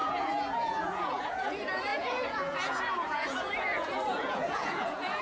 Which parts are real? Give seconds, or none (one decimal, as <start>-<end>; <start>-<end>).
none